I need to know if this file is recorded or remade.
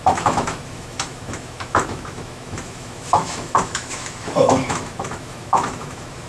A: remade